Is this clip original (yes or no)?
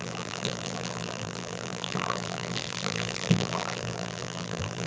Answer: no